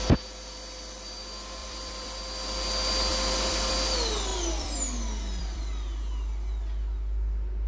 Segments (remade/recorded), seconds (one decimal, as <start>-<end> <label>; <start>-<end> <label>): 0.0-1.6 recorded; 1.6-2.2 remade; 2.2-3.1 recorded; 3.1-3.7 remade; 3.7-4.3 recorded; 4.3-5.6 remade; 5.6-7.7 recorded